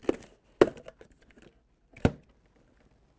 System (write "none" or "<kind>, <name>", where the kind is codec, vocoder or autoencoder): none